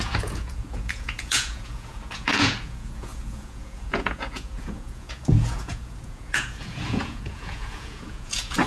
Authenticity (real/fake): fake